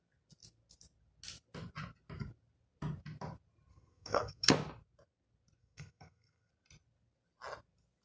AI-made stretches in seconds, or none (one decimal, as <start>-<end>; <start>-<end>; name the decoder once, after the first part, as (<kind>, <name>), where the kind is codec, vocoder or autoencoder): 3.7-4.5 (codec, SNAC); 5.6-6.5